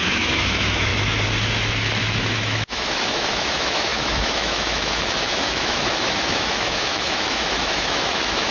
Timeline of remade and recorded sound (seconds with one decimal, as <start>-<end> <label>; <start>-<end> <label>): 0.0-0.9 remade; 0.9-2.0 recorded; 2.0-8.5 remade